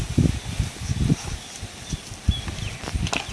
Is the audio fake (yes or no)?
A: no